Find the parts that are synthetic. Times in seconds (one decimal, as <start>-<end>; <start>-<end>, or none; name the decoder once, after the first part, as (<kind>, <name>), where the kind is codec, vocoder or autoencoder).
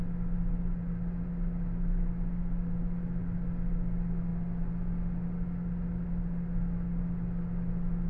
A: none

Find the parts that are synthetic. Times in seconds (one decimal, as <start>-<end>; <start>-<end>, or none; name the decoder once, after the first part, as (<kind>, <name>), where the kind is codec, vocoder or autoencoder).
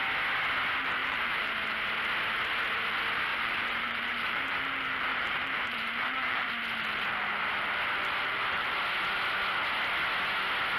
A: 1.0-1.9 (vocoder, BigVGAN v2); 3.3-4.6; 5.1-6.5